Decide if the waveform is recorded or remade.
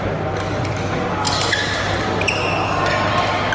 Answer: recorded